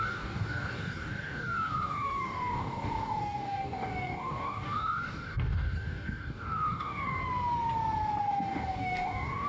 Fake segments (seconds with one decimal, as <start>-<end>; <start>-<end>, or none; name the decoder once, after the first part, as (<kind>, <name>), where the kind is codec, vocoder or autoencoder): 0.0-7.2 (codec, DAC); 8.2-9.5

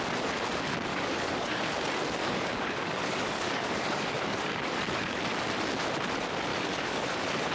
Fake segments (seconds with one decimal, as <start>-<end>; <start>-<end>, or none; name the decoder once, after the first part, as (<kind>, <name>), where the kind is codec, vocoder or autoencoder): 0.9-1.6 (codec, DAC); 2.2-5.2; 6.5-7.5